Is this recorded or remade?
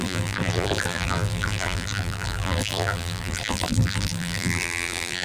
remade